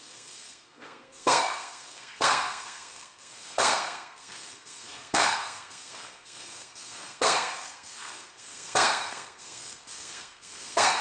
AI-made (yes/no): yes